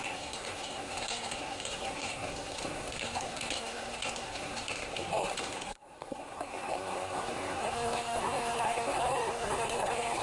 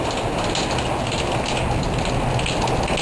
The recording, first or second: second